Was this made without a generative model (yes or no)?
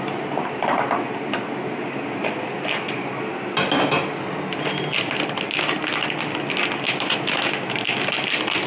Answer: yes